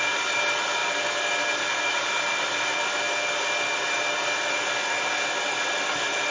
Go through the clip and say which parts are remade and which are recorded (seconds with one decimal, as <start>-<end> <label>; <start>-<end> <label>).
0.0-6.3 recorded